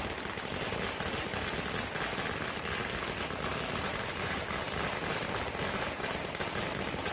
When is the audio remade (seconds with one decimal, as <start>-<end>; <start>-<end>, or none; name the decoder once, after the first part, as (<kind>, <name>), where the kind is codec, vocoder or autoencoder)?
3.8-4.5 (vocoder, BigVGAN v2)